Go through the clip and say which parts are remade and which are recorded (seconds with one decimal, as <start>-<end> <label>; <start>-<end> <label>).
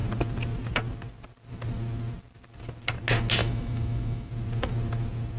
0.0-3.4 recorded; 3.4-4.3 remade; 4.3-5.4 recorded